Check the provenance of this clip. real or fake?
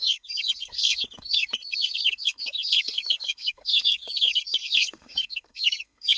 fake